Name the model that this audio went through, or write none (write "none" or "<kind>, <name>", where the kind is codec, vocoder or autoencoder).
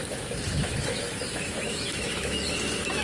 autoencoder, DAC-VAE